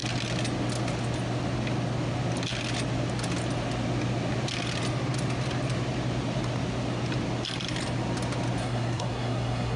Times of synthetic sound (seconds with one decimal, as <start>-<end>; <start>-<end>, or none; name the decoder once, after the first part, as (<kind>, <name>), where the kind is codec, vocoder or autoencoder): 8.6-9.8 (codec, SNAC)